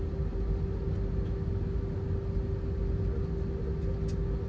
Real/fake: real